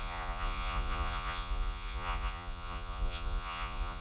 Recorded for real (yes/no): no